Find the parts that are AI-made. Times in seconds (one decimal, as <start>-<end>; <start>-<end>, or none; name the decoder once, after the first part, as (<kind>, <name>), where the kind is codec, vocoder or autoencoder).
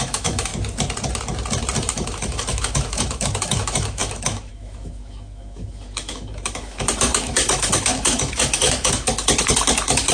0.0-0.5 (autoencoder, DAC-VAE); 1.8-10.1